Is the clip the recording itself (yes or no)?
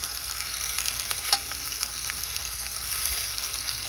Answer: no